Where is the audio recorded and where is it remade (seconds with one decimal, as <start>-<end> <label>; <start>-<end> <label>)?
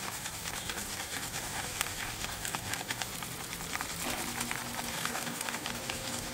0.0-3.1 remade; 3.1-4.9 recorded; 4.9-6.3 remade